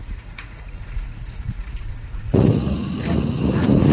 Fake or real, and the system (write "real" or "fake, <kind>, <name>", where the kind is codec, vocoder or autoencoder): fake, vocoder, Vocos